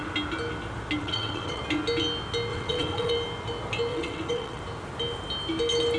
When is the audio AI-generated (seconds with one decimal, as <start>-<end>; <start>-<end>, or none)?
1.0-1.6; 2.5-3.1; 3.9-4.6